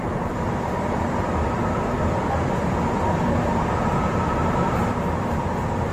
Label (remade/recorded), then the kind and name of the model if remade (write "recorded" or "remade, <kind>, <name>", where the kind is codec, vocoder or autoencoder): remade, vocoder, BigVGAN v2